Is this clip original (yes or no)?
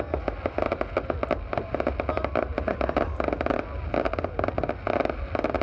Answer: yes